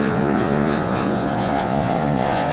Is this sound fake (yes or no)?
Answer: yes